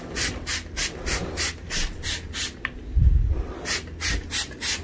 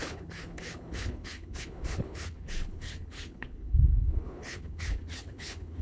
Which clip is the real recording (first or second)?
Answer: first